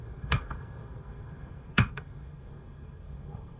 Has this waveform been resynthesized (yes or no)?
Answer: yes